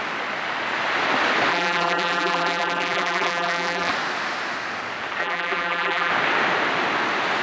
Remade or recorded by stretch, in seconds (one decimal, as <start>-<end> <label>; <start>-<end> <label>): 0.0-1.5 recorded; 1.5-3.9 remade; 3.9-5.2 recorded; 5.2-6.1 remade; 6.1-7.4 recorded